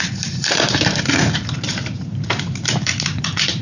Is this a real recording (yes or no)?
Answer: no